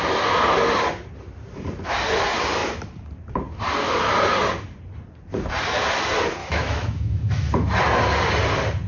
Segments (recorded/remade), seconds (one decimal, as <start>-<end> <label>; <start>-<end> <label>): 0.0-6.4 recorded; 6.4-7.8 remade; 7.8-8.9 recorded